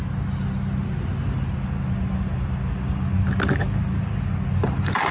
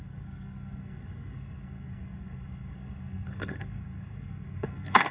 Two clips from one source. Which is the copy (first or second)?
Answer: second